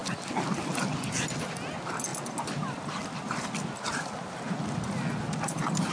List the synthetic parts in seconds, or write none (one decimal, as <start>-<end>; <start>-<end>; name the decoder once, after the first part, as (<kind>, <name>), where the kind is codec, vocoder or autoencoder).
none